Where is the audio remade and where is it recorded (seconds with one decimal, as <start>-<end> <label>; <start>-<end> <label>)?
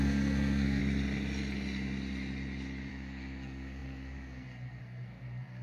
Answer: 0.0-0.8 remade; 0.8-2.9 recorded; 2.9-5.6 remade